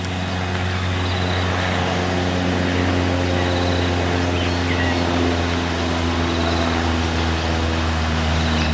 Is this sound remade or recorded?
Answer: recorded